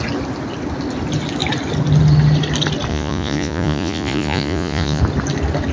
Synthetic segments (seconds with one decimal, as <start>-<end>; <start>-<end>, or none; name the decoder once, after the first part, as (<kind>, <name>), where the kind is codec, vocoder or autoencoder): 2.9-5.0 (vocoder, Vocos)